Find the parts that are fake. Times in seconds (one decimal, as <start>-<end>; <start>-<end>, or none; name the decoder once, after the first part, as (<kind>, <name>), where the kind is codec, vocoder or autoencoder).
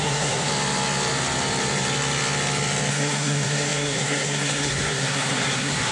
0.0-0.5 (codec, SNAC); 2.9-5.9